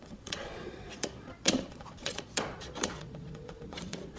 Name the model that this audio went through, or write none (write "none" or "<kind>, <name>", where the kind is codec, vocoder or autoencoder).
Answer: vocoder, Vocos